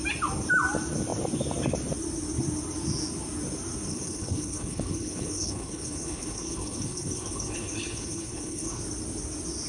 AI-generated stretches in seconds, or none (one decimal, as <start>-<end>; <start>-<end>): 3.9-8.8